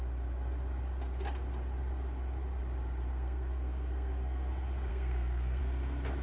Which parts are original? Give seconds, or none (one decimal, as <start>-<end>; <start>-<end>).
0.0-3.1; 4.5-4.9; 5.6-6.2